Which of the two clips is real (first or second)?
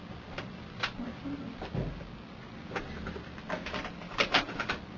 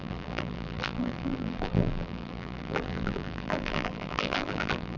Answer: first